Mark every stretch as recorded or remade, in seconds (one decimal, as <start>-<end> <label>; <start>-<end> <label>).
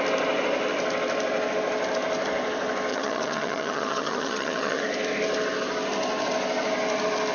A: 0.0-2.9 recorded; 2.9-4.8 remade; 4.8-7.3 recorded